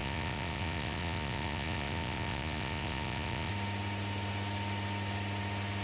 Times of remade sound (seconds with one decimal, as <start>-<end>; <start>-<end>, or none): 0.0-3.5